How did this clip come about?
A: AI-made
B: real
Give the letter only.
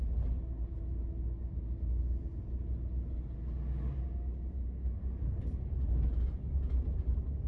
B